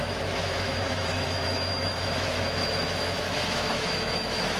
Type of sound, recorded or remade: remade